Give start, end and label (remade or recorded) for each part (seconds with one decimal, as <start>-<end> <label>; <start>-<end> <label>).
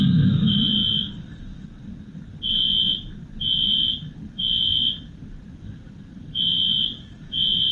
0.0-7.7 recorded